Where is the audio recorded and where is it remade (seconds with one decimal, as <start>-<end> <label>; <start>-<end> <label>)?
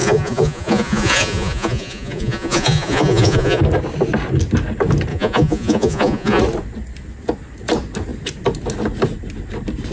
0.0-3.6 remade; 3.6-5.1 recorded; 5.1-6.4 remade; 6.4-9.9 recorded